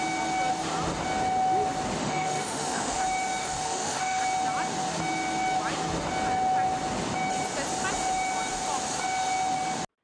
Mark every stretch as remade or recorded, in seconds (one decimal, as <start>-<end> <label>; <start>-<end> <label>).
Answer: 0.0-2.0 recorded; 2.0-3.0 remade; 3.0-3.4 recorded; 3.4-4.2 remade; 4.2-10.0 recorded